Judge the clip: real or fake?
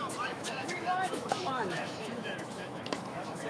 fake